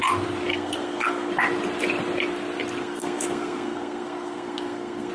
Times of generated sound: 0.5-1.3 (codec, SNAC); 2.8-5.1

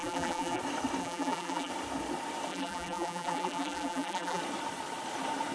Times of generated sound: 0.0-0.6 (vocoder, BigVGAN v2); 1.0-1.7; 2.5-4.4

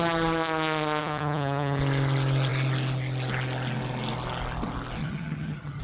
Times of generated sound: 1.0-1.8 (vocoder, HiFi-GAN); 5.0-5.8

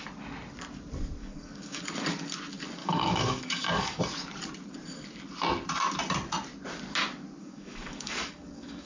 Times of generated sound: 1.2-1.8 (codec, DAC); 2.8-4.0; 7.4-8.9

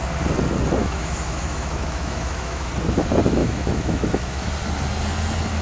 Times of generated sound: 0.8-2.7 (autoencoder, DAC-VAE); 3.4-4.5

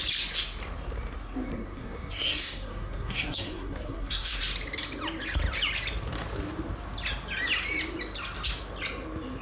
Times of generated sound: 1.5-4.4 (codec, SNAC)